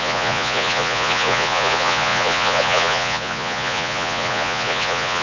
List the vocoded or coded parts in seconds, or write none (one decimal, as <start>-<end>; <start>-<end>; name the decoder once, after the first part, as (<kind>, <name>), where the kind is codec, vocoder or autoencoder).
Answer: 0.0-5.2 (vocoder, Vocos)

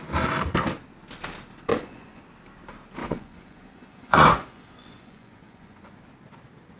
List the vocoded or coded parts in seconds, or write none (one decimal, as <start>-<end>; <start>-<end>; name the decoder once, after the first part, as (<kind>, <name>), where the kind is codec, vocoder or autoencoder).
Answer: 1.7-2.2 (vocoder, Vocos); 3.0-6.0

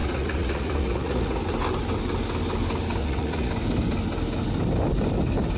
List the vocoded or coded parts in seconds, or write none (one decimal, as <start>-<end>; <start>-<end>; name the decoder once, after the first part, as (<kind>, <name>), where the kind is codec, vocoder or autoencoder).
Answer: 0.0-1.4 (vocoder, Vocos); 3.0-3.5

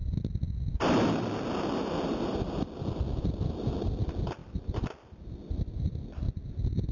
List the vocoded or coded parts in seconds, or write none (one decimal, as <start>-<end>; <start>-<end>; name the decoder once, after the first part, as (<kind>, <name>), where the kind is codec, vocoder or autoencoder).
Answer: none

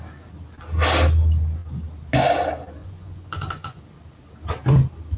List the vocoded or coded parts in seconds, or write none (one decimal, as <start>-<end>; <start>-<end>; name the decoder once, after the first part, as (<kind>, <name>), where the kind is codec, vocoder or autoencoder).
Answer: 2.8-3.8 (vocoder, Vocos)

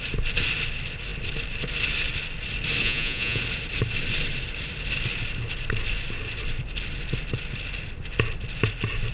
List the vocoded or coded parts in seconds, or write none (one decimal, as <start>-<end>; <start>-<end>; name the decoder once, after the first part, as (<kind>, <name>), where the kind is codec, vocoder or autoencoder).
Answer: 2.8-3.4 (vocoder, Vocos)